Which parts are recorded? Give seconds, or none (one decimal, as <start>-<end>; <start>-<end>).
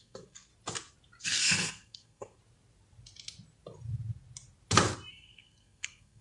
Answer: 0.5-1.2; 2.4-5.1